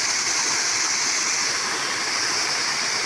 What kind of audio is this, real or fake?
real